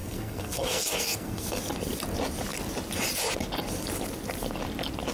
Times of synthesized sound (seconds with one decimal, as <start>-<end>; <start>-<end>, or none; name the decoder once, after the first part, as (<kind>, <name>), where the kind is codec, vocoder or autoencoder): 0.0-1.6 (codec, SNAC)